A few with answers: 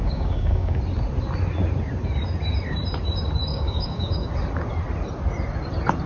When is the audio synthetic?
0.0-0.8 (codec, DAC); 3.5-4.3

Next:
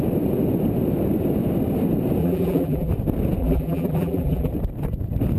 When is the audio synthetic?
2.2-2.9 (vocoder, BigVGAN v2); 3.4-4.5

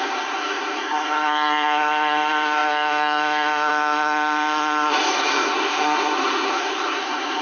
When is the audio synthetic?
0.0-7.4 (codec, SNAC)

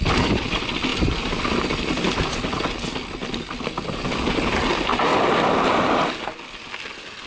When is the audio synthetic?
none

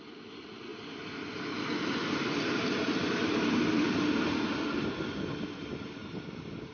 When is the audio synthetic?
none

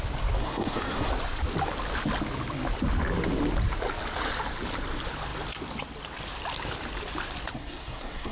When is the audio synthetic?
0.4-1.1 (codec, SNAC); 7.5-8.3